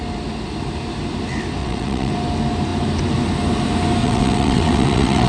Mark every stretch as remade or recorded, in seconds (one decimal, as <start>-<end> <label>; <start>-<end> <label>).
0.0-1.6 recorded; 1.6-2.1 remade; 2.1-4.0 recorded; 4.0-5.3 remade